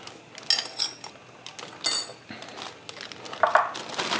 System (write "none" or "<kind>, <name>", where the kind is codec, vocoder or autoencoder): none